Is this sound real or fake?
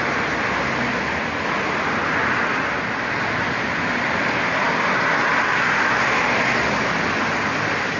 real